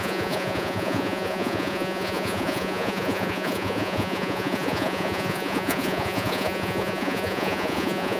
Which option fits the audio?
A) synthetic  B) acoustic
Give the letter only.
A